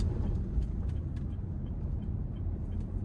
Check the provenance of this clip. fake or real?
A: fake